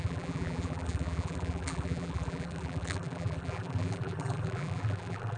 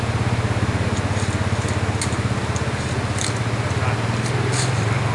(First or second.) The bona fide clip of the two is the second